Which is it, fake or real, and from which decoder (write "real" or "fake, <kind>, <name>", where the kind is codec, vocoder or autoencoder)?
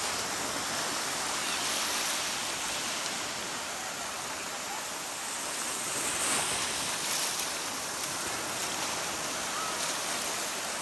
real